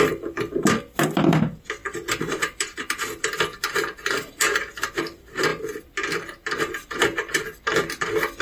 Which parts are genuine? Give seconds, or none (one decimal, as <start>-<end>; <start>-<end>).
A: none